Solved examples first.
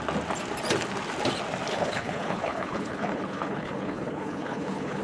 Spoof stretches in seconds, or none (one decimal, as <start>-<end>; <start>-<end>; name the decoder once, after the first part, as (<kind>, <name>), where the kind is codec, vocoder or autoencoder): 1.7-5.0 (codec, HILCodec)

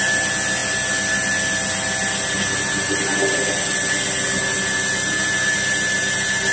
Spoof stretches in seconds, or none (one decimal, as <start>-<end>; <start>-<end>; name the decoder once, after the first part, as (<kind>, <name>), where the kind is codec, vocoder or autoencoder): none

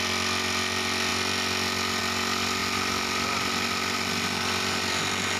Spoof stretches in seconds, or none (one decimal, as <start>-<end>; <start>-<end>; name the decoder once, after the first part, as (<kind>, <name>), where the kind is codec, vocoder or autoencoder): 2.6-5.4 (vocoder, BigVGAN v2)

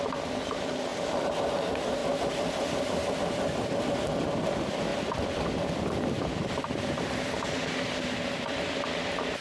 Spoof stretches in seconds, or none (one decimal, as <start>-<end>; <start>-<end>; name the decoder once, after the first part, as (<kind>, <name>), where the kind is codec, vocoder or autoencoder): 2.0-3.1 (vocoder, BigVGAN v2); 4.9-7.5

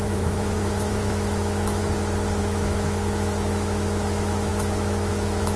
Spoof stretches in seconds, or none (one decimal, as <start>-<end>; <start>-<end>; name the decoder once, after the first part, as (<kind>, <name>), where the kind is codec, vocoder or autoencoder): 0.0-1.8 (autoencoder, DAC-VAE); 2.4-5.6

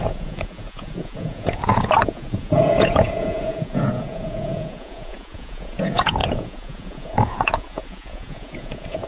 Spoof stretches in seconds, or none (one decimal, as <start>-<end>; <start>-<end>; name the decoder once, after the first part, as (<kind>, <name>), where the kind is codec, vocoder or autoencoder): 0.0-9.1 (vocoder, Vocos)